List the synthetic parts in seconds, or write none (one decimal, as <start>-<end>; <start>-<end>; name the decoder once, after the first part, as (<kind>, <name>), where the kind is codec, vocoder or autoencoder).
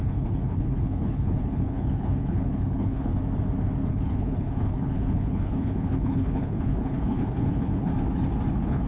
0.0-3.1 (codec, HILCodec); 3.9-7.9; 8.5-8.9